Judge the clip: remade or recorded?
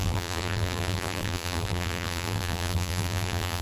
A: remade